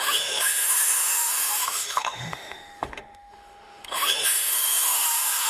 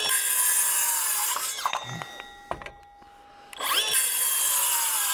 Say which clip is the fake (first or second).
first